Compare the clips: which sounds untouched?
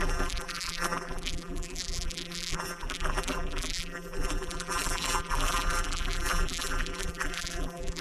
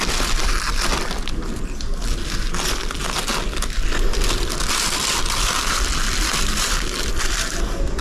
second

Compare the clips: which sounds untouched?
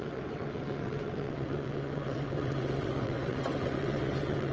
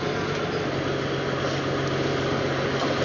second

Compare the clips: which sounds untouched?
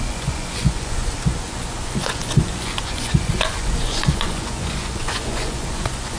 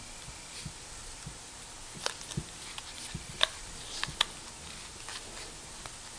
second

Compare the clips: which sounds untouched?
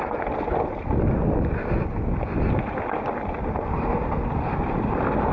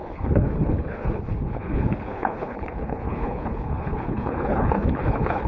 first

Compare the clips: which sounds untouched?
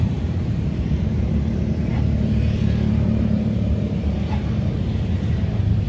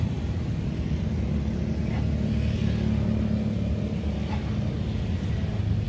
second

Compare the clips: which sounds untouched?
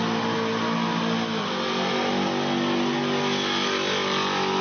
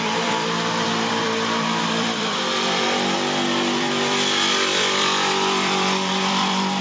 first